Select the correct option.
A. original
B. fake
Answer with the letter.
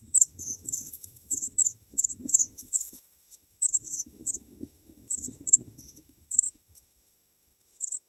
B